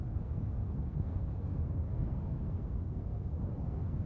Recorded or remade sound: remade